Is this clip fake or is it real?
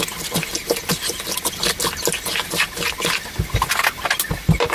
real